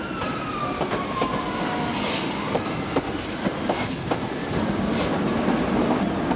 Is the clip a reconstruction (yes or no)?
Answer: no